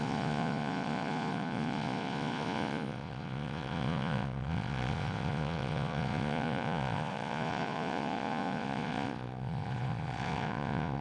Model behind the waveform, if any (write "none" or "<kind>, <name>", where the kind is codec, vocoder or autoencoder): vocoder, Vocos